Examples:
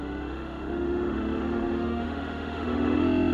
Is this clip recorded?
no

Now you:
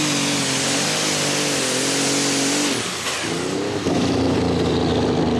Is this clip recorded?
yes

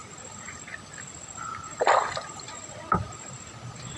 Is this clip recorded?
yes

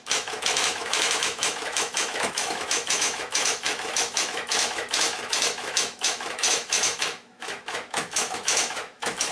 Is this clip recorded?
no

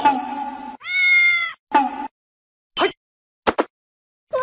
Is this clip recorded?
yes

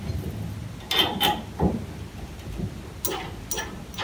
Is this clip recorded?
yes